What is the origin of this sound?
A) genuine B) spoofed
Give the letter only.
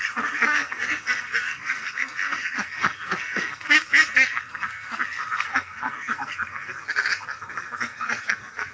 B